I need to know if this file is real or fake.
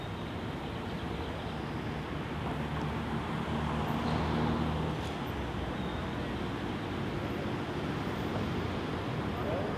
real